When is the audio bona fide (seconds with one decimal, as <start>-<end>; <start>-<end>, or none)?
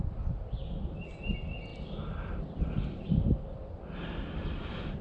0.0-5.0